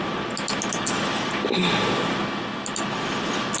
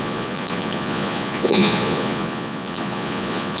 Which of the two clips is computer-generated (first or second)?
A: second